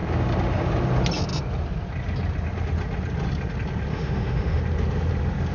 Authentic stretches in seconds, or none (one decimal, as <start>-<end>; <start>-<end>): 0.0-3.9; 4.6-5.5